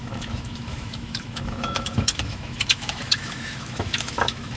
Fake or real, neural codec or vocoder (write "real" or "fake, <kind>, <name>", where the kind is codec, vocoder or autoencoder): fake, autoencoder, DAC-VAE